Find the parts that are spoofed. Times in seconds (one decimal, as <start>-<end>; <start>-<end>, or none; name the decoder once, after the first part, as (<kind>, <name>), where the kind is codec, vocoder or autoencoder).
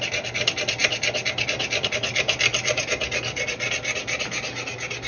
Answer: none